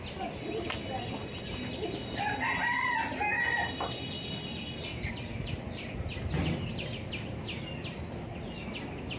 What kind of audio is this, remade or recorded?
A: recorded